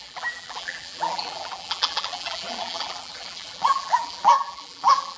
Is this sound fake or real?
fake